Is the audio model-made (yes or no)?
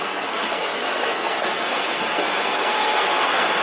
yes